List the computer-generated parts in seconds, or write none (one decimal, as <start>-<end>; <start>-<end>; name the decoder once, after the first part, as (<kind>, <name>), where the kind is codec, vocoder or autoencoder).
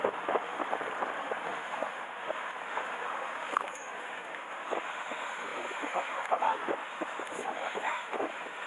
0.0-0.6 (autoencoder, DAC-VAE); 1.2-8.7